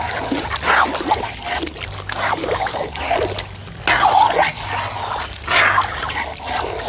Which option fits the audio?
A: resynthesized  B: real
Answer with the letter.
B